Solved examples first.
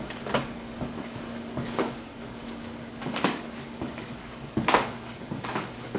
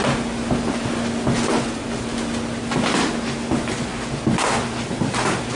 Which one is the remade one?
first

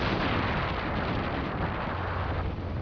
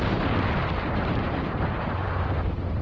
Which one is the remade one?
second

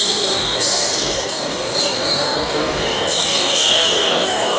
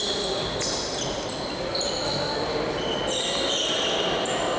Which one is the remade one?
first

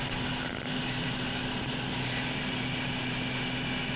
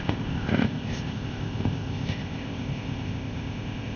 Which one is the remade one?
second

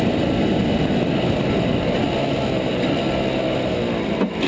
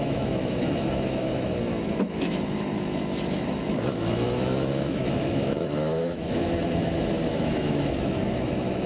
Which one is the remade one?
second